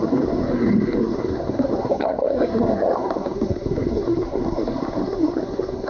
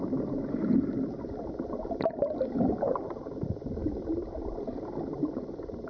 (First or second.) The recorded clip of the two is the second